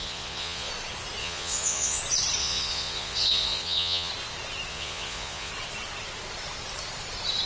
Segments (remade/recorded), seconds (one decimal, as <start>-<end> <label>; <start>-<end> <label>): 0.0-0.7 remade; 0.7-1.2 recorded; 1.2-2.0 remade; 2.0-2.4 recorded; 2.4-4.1 remade; 4.1-4.7 recorded; 4.7-5.5 remade; 5.5-7.5 recorded